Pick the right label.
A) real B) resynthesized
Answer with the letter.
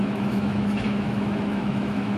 B